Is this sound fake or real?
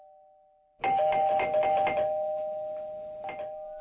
real